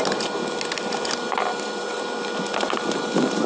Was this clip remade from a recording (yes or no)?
no